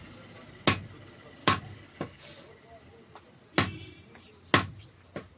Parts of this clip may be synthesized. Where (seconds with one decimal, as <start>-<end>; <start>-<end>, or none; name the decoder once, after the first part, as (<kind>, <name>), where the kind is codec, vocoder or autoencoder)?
1.4-2.5 (codec, DAC)